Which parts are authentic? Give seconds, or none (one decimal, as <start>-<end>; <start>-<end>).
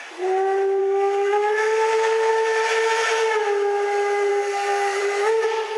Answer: 0.0-0.8; 2.3-4.3; 5.0-5.8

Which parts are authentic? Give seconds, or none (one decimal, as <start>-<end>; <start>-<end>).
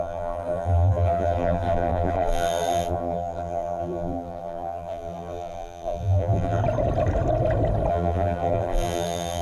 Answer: 6.6-7.9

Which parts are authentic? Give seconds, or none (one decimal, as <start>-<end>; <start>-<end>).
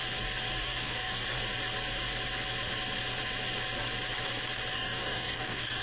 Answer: 0.0-0.6; 1.2-4.7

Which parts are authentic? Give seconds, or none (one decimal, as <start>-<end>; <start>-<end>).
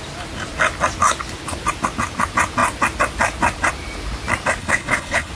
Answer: 0.0-4.6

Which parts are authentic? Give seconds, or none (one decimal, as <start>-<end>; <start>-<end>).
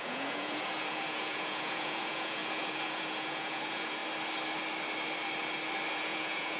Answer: 4.0-5.9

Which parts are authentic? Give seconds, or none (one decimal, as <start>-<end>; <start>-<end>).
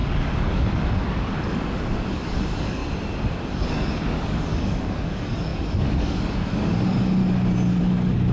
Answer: 2.8-3.5; 7.2-7.8